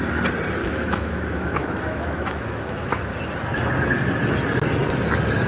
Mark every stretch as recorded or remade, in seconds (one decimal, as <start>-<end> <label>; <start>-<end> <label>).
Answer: 0.0-0.6 recorded; 0.6-3.1 remade; 3.1-5.5 recorded

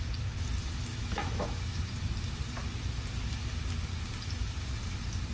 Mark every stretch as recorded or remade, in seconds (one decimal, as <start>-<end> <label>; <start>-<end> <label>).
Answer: 0.0-0.9 recorded; 0.9-1.8 remade; 1.8-5.3 recorded